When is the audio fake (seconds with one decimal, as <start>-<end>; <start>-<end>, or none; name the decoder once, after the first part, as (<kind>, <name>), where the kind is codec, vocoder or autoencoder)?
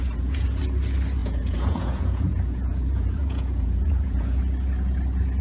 0.0-0.6 (vocoder, Vocos); 1.2-4.4